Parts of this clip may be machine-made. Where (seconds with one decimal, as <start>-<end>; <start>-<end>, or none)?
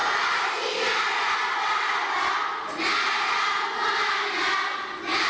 none